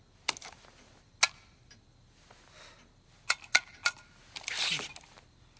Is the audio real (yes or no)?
yes